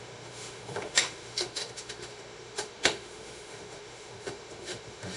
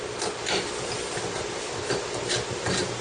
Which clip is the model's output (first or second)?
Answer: first